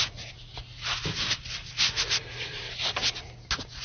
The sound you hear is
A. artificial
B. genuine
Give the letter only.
B